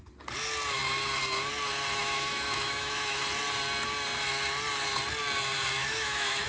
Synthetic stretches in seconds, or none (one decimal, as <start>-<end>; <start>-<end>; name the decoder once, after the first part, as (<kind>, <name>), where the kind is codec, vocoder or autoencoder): 2.0-3.2 (autoencoder, DAC-VAE); 5.8-6.5